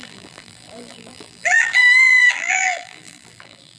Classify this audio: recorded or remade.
remade